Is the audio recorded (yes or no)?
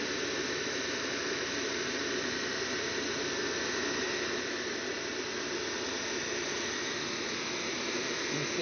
yes